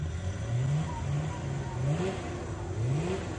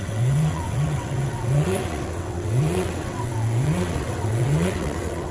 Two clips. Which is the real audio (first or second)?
first